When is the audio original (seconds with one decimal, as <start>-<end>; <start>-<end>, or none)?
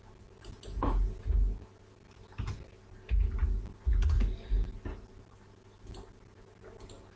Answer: 0.0-7.2